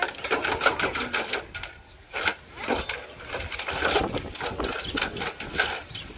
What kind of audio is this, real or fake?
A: real